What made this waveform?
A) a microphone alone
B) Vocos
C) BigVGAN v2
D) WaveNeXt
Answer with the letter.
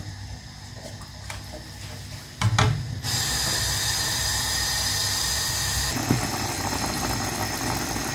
A